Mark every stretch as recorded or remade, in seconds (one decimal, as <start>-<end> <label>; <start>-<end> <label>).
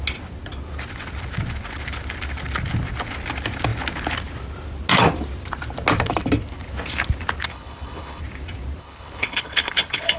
0.0-7.5 recorded; 7.5-8.2 remade; 8.2-8.8 recorded; 8.8-10.2 remade